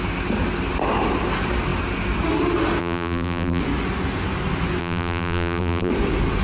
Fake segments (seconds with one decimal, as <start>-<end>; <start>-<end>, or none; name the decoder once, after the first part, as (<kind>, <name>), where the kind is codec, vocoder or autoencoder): 2.8-3.6 (vocoder, BigVGAN v2); 4.8-5.9